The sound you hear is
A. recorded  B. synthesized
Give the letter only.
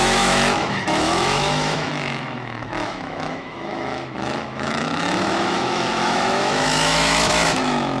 B